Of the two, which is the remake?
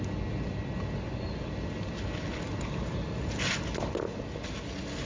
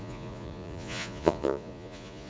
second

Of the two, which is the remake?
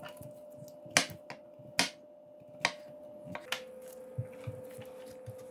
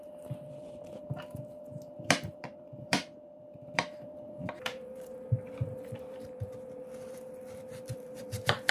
second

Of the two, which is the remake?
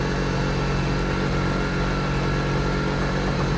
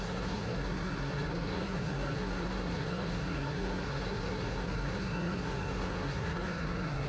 second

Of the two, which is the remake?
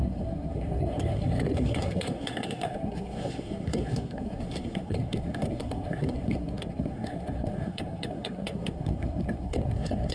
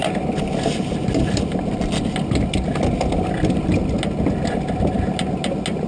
first